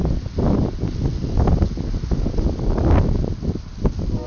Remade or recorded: recorded